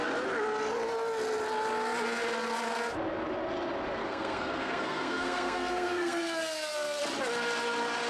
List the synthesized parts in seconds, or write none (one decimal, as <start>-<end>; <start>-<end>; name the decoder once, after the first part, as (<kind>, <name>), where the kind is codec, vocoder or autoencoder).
4.0-7.0 (codec, SNAC)